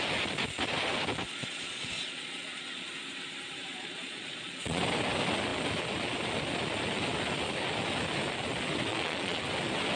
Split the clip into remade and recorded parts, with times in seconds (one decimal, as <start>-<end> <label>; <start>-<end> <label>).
0.0-1.4 recorded; 1.4-2.9 remade; 2.9-3.7 recorded; 3.7-4.8 remade; 4.8-8.9 recorded; 8.9-9.4 remade; 9.4-10.0 recorded